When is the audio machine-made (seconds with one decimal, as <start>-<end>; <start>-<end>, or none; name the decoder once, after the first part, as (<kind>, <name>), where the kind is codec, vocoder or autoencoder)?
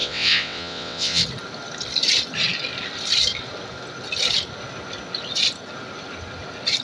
0.0-1.2 (vocoder, WaveNeXt)